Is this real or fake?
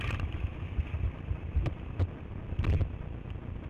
real